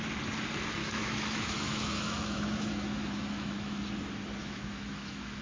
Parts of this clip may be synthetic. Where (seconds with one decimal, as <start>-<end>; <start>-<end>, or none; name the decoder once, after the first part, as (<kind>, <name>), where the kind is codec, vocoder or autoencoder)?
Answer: 0.8-3.8 (autoencoder, DAC-VAE); 4.4-5.4